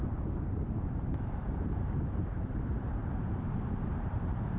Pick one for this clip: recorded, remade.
remade